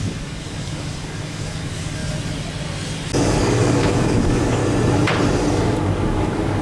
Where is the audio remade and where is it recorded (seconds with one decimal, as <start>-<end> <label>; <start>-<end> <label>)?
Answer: 0.0-2.0 remade; 2.0-3.4 recorded; 3.4-4.6 remade; 4.6-5.5 recorded; 5.5-6.6 remade